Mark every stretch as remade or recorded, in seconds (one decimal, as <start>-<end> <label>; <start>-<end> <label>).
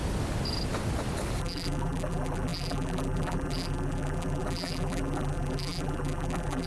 0.0-1.4 recorded; 1.4-6.7 remade